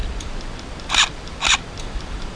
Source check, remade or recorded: recorded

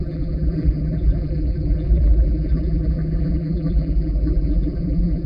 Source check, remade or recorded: remade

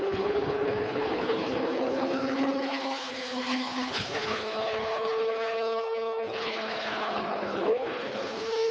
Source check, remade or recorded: remade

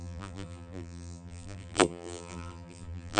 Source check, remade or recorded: remade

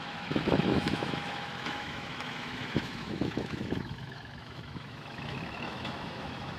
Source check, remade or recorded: remade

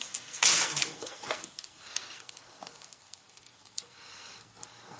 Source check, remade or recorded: remade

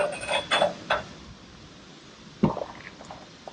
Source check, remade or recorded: remade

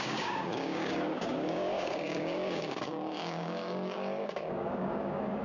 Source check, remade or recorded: remade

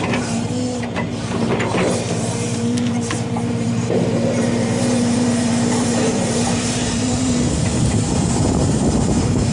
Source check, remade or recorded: remade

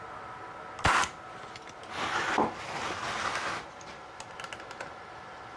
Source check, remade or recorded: recorded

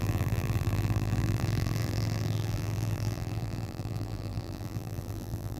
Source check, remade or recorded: remade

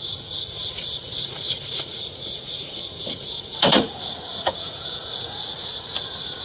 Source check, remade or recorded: remade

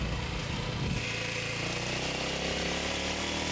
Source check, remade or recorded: recorded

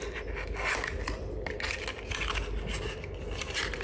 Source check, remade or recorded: recorded